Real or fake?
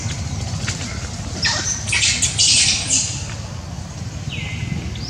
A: real